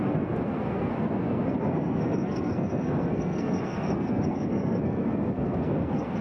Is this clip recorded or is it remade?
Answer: remade